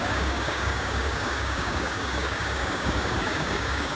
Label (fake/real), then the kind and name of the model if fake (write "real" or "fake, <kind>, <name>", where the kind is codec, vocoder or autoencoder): fake, codec, DAC